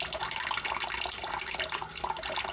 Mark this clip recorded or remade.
recorded